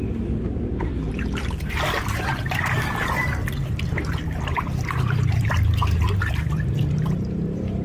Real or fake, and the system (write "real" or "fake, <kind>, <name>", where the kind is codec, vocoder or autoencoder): fake, vocoder, BigVGAN v2